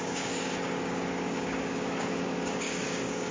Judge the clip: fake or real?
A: fake